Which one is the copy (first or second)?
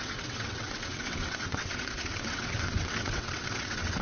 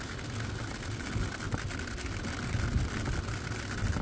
first